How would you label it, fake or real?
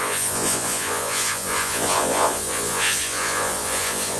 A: fake